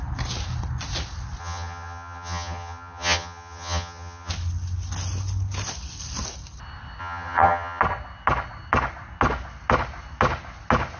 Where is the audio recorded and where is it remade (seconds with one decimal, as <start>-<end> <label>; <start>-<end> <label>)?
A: 0.0-1.4 recorded; 1.4-4.3 remade; 4.3-7.0 recorded; 7.0-7.8 remade; 7.8-11.0 recorded